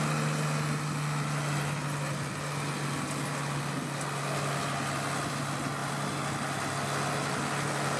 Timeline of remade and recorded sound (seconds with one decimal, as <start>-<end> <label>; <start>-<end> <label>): 0.0-8.0 recorded

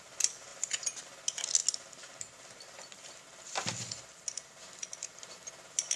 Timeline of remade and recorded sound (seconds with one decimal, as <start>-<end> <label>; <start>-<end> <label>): 0.0-6.0 recorded

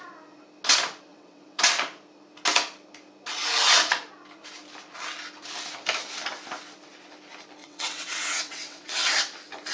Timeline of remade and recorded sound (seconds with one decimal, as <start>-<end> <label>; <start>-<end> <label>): 0.0-1.1 recorded; 1.1-1.6 remade; 1.6-7.6 recorded; 7.6-9.1 remade; 9.1-9.7 recorded

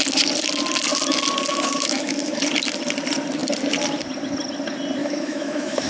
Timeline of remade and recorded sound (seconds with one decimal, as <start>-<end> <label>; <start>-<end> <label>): 0.0-1.5 recorded; 1.5-2.4 remade; 2.4-5.0 recorded; 5.0-5.9 remade

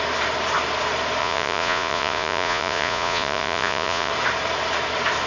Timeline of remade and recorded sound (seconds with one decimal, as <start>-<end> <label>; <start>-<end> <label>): 0.0-1.2 recorded; 1.2-4.1 remade; 4.1-5.3 recorded

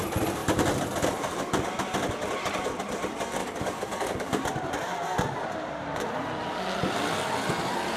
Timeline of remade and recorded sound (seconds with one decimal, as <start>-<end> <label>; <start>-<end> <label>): 0.0-3.4 recorded; 3.4-4.3 remade; 4.3-8.0 recorded

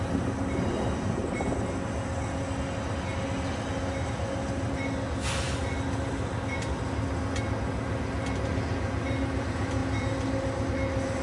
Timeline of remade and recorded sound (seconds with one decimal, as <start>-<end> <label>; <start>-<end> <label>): 0.0-11.2 recorded

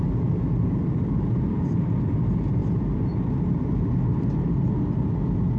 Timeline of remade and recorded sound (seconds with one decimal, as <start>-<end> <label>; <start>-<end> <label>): 0.0-5.6 recorded